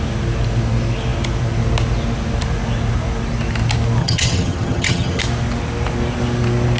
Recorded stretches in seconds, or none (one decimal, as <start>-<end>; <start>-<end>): 0.0-4.0; 5.2-6.8